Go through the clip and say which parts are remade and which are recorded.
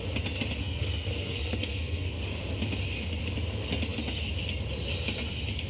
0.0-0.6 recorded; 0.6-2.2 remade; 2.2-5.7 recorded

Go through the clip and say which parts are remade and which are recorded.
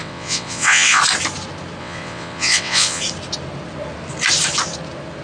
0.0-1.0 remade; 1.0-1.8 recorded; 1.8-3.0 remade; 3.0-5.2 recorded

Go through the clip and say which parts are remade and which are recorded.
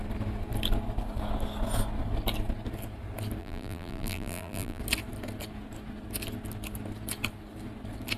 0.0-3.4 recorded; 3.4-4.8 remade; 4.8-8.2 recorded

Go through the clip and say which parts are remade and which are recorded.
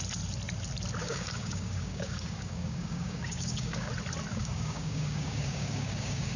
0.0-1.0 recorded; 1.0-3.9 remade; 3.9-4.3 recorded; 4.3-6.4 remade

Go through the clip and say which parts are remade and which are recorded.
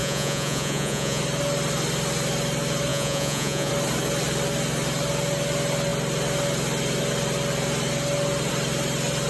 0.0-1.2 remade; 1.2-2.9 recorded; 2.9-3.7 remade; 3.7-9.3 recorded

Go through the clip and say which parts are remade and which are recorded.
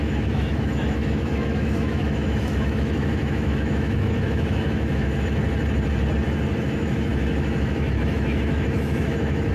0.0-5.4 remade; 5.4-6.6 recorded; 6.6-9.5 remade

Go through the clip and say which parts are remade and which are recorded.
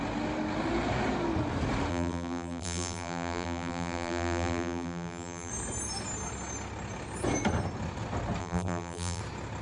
0.0-1.9 recorded; 1.9-5.5 remade; 5.5-8.4 recorded; 8.4-9.2 remade; 9.2-9.6 recorded